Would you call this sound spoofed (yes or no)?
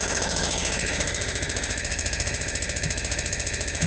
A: yes